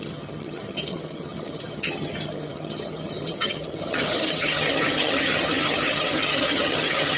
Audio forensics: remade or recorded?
remade